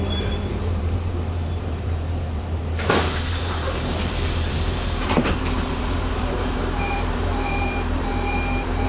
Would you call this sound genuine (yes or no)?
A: no